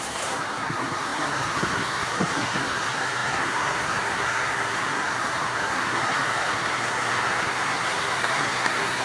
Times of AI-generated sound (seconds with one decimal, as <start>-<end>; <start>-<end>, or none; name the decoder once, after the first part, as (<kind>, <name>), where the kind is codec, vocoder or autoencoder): 0.0-9.0 (codec, SNAC)